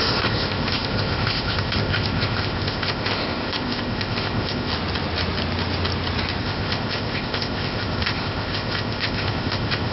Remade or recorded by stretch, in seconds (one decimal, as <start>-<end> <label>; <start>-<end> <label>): 0.0-4.7 remade; 4.7-6.4 recorded; 6.4-9.9 remade